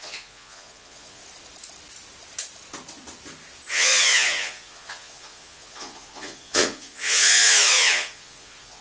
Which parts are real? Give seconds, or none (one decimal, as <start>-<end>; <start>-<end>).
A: 1.2-3.7